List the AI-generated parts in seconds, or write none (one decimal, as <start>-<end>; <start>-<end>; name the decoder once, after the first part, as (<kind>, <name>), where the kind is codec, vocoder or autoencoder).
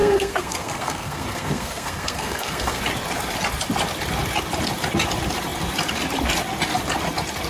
0.0-2.8 (codec, SNAC)